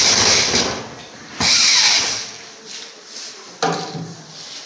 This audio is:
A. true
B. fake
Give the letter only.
A